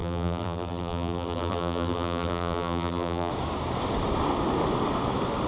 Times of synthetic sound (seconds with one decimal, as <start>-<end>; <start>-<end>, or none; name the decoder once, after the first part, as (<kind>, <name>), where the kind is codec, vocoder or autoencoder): 0.0-3.3 (vocoder, BigVGAN v2)